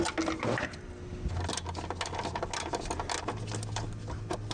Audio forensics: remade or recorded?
recorded